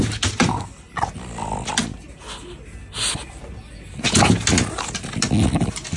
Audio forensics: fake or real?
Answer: real